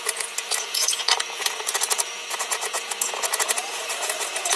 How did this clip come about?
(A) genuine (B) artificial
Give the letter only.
B